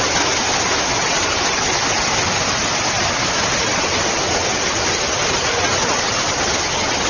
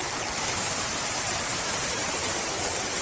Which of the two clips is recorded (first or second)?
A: first